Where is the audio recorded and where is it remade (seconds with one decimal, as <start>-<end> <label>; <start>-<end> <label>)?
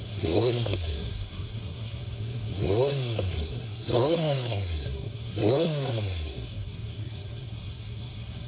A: 0.0-8.5 remade